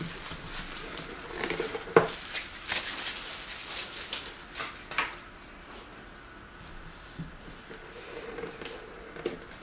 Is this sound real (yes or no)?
no